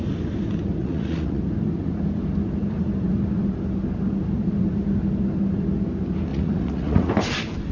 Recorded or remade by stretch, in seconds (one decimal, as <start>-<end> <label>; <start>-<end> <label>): 0.0-0.8 recorded; 0.8-1.4 remade; 1.4-6.3 recorded; 6.3-7.1 remade; 7.1-7.7 recorded